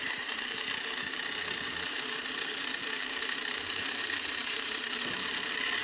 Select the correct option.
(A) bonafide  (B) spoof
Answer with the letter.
B